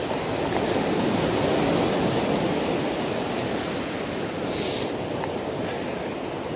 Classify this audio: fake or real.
real